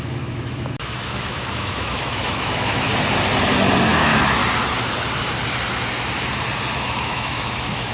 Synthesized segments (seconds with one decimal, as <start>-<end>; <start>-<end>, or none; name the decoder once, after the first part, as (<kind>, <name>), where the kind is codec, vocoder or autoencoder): 0.0-2.9 (autoencoder, DAC-VAE); 3.9-4.4; 6.8-7.9